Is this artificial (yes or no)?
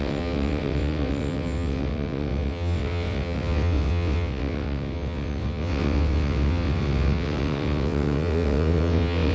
yes